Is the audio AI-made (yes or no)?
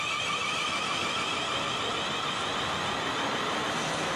yes